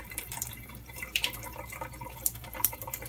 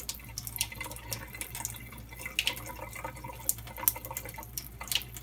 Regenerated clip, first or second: first